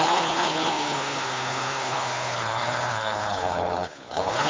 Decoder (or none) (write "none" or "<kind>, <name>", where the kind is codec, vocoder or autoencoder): codec, HILCodec